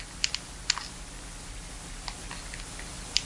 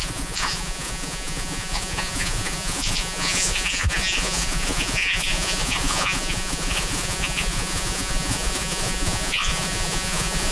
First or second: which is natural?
first